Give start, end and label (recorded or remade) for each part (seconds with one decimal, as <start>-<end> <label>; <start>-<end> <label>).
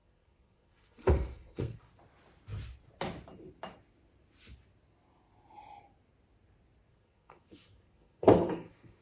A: 0.0-1.9 remade; 1.9-6.9 recorded; 6.9-9.0 remade